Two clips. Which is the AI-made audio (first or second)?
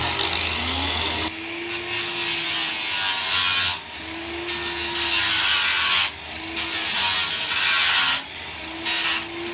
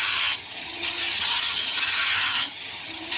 second